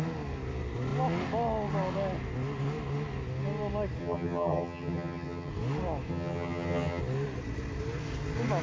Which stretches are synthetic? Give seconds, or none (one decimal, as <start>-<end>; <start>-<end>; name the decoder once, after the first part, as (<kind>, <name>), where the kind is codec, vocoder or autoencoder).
4.0-5.5 (vocoder, HiFi-GAN); 6.1-7.0